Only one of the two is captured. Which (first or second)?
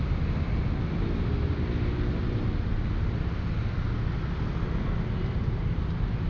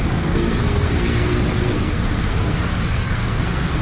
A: first